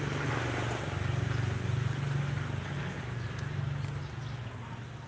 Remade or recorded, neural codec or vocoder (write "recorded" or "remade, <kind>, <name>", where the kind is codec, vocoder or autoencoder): recorded